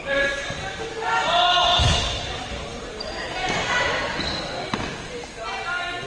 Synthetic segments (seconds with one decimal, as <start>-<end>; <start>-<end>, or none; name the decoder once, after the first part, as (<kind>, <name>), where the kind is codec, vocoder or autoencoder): none